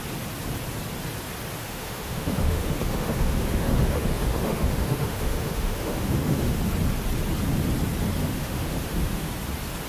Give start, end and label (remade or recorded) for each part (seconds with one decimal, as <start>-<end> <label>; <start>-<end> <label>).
0.0-1.6 recorded; 1.6-6.6 remade; 6.6-8.2 recorded; 8.2-9.3 remade; 9.3-9.9 recorded